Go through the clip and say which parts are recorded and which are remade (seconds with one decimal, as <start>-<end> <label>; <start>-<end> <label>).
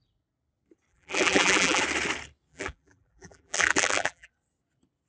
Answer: 0.0-0.9 recorded; 0.9-1.8 remade; 1.8-2.5 recorded; 2.5-4.3 remade; 4.3-5.1 recorded